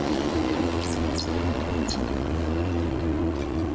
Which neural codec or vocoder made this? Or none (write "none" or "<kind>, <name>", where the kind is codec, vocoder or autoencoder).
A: vocoder, Vocos